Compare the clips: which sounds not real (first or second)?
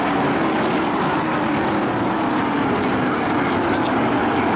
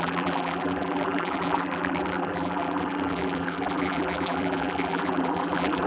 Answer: second